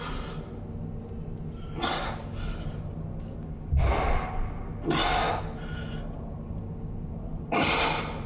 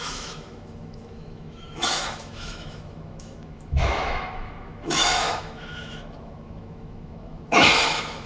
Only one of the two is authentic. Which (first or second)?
first